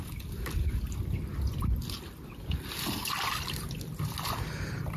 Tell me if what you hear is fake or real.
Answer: real